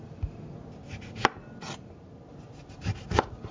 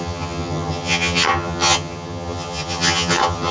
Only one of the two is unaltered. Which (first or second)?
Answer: first